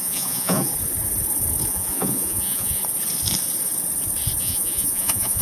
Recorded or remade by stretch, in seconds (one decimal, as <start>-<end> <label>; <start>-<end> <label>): 0.0-0.7 remade; 0.7-1.7 recorded; 1.7-2.8 remade; 2.8-4.4 recorded; 4.4-5.4 remade